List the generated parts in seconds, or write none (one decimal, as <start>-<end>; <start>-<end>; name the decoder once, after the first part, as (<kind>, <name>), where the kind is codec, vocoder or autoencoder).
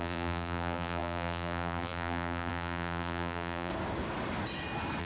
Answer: 0.0-3.7 (vocoder, BigVGAN v2)